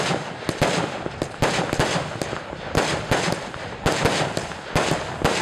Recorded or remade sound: recorded